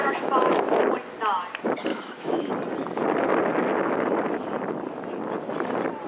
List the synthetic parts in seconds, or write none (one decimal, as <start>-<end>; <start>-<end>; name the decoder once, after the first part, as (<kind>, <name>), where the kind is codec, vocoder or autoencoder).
0.0-0.6 (autoencoder, DAC-VAE); 1.9-2.5